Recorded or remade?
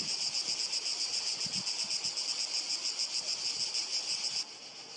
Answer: recorded